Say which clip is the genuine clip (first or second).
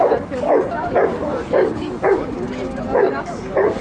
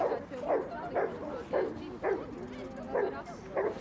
second